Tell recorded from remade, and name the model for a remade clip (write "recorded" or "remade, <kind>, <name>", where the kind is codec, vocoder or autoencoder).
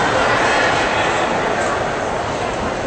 recorded